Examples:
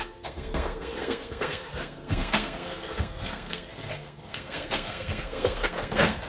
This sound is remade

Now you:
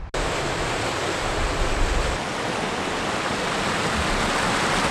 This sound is recorded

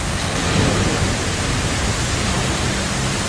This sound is recorded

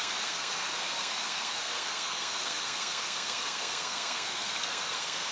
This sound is remade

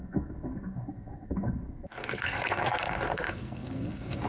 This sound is remade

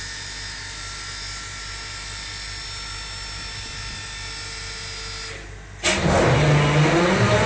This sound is recorded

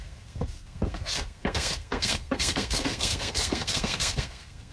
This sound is remade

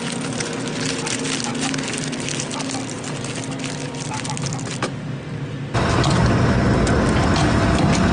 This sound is recorded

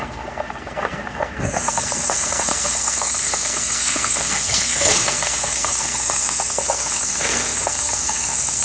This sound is remade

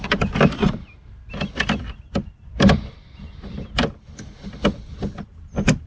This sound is recorded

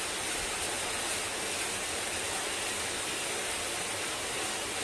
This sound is recorded